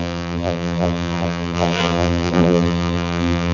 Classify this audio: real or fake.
fake